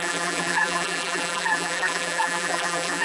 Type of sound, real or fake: fake